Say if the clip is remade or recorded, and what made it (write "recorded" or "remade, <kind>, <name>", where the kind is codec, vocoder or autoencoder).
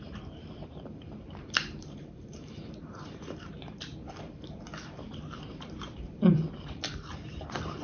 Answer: remade, vocoder, BigVGAN v2